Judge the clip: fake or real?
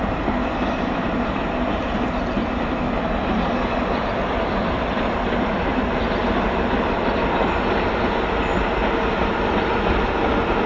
real